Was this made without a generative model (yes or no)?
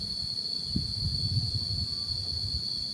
yes